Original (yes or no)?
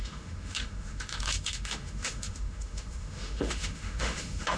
no